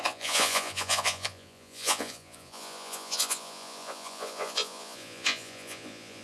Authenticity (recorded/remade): remade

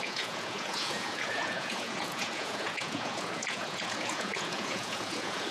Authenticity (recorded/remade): remade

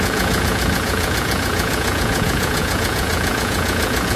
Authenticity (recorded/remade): remade